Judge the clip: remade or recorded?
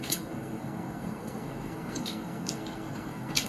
remade